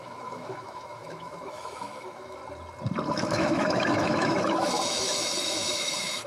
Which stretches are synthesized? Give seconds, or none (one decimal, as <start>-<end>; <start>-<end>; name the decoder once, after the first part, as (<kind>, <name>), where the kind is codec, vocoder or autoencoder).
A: 0.0-2.4 (autoencoder, DAC-VAE); 3.1-6.3